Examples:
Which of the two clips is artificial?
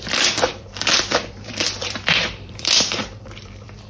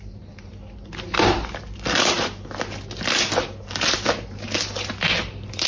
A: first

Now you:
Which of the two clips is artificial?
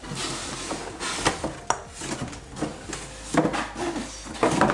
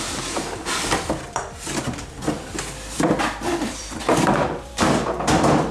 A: second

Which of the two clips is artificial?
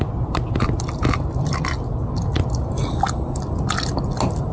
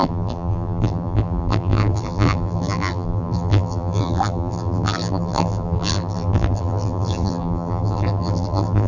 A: second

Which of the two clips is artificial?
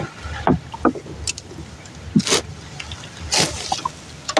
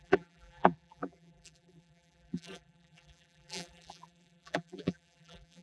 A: second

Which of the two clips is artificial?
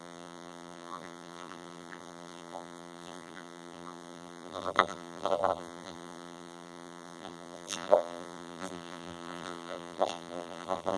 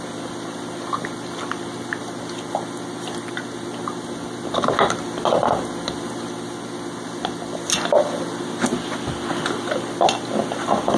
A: first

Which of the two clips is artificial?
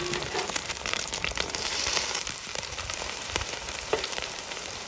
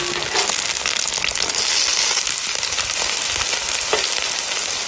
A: first